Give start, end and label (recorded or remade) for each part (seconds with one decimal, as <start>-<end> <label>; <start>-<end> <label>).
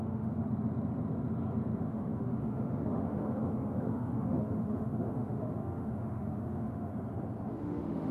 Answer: 0.0-0.4 remade; 0.4-1.8 recorded; 1.8-6.9 remade; 6.9-7.5 recorded; 7.5-8.1 remade